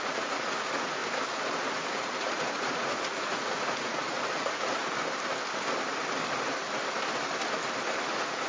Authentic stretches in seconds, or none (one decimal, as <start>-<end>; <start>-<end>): 1.0-2.0; 4.8-8.1